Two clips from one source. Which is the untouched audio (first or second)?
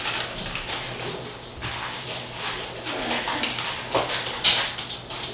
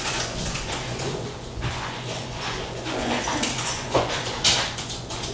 first